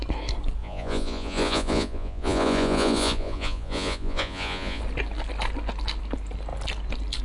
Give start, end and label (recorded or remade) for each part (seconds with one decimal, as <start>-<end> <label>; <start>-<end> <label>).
0.0-0.6 recorded; 0.6-4.8 remade; 4.8-7.2 recorded